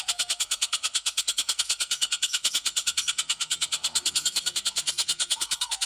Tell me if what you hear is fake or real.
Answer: fake